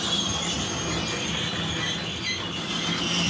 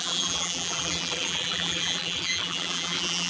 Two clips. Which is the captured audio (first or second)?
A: first